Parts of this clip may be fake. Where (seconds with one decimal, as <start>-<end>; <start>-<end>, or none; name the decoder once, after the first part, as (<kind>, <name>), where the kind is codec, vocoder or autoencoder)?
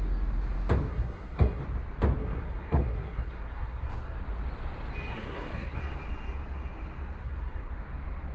0.9-1.6 (codec, SNAC); 2.2-4.2; 5.1-5.8; 7.2-7.7